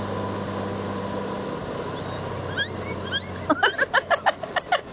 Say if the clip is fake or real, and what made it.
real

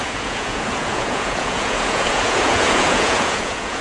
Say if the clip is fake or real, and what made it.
fake, vocoder, Vocos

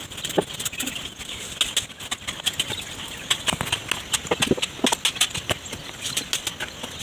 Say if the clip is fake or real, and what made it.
real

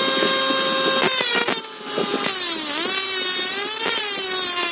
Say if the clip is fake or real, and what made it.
real